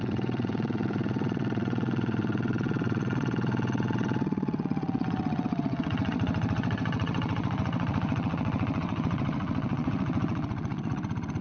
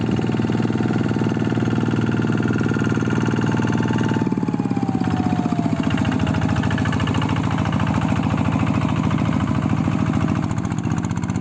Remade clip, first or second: first